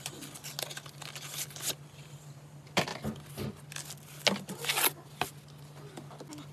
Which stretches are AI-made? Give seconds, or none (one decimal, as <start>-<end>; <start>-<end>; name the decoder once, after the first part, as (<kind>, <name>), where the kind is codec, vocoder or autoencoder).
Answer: none